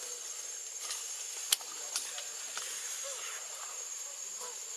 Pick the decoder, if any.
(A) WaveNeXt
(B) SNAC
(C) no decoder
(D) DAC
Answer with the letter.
C